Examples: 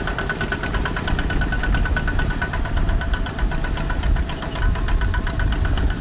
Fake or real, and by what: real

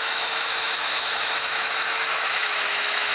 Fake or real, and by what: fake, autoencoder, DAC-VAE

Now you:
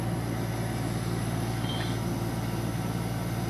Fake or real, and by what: real